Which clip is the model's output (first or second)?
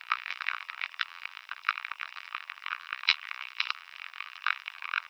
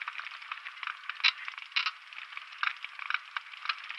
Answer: first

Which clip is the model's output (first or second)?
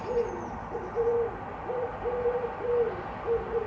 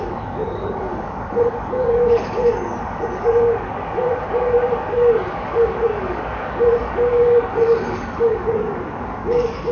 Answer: second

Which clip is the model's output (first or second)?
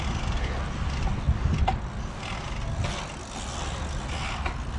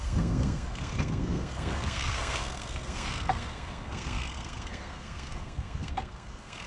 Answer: second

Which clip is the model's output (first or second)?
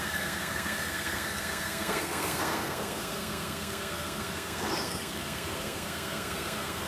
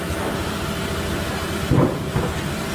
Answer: first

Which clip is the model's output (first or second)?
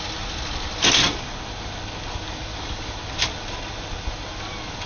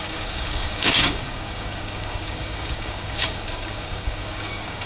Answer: second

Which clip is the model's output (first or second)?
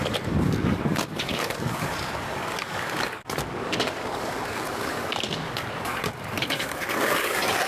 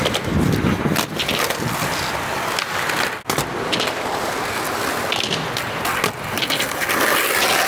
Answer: first